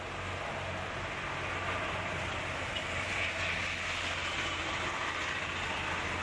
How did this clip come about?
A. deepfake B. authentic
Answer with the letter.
B